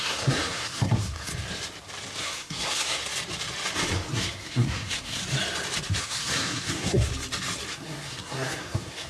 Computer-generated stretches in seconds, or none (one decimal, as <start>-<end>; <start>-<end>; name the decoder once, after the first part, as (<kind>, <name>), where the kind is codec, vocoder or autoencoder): 0.0-1.3 (codec, SNAC); 2.2-3.0; 4.1-5.2; 6.0-7.1; 7.7-9.1